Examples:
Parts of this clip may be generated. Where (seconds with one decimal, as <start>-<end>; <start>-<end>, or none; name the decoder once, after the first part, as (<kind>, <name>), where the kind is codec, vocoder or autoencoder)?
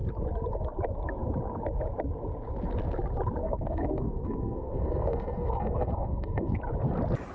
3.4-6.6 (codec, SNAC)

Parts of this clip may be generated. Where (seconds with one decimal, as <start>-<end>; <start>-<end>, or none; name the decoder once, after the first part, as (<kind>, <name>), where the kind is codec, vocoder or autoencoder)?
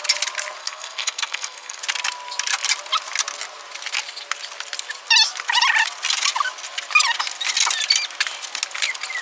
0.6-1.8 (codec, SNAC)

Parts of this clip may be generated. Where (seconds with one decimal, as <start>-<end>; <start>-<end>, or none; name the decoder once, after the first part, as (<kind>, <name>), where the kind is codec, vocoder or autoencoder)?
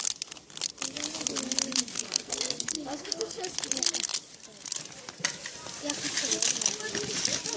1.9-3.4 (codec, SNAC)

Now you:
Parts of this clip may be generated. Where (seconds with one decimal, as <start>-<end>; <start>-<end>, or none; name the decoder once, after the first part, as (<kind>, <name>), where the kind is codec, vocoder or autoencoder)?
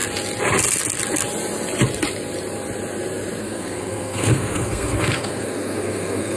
3.4-6.4 (codec, SNAC)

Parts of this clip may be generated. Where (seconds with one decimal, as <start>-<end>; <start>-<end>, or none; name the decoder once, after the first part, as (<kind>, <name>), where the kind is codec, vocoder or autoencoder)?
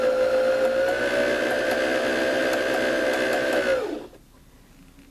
none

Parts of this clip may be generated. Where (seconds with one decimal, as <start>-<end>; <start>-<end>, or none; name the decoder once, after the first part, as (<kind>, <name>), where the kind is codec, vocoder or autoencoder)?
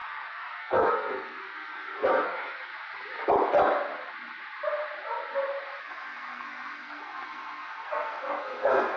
0.0-2.7 (codec, SNAC); 5.8-9.0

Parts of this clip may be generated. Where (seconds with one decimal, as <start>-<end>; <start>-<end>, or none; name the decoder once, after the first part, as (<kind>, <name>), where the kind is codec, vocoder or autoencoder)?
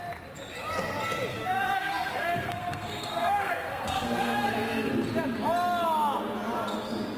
1.3-4.9 (codec, SNAC)